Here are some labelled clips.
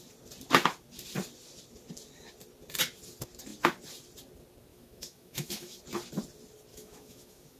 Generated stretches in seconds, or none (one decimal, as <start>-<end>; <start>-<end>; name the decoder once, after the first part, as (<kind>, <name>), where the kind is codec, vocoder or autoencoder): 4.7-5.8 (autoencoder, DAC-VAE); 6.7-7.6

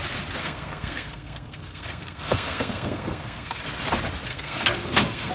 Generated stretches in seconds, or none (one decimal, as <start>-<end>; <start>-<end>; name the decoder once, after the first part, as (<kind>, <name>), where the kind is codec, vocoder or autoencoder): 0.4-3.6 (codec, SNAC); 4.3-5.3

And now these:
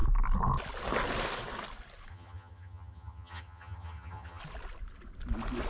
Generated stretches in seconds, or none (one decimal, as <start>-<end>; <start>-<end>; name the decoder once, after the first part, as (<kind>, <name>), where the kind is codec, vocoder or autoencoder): 2.1-4.4 (vocoder, HiFi-GAN)

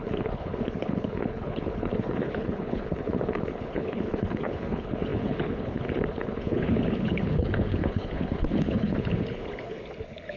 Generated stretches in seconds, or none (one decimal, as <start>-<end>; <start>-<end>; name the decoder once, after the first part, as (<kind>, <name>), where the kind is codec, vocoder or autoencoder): 0.0-10.4 (codec, HILCodec)